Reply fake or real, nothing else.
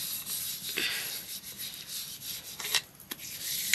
real